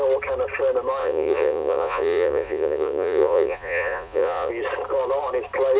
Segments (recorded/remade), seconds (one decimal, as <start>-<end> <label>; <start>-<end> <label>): 0.0-1.0 recorded; 1.0-4.5 remade; 4.5-5.8 recorded